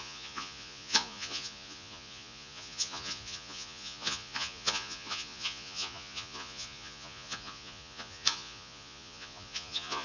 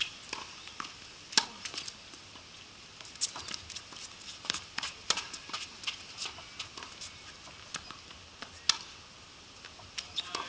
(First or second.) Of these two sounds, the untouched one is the second